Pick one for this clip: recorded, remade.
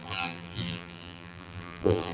remade